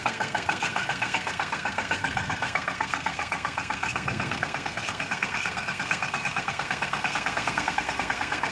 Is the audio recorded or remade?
remade